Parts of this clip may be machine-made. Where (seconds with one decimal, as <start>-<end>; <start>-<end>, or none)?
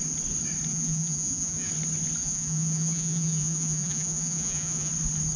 0.7-1.7; 2.2-4.9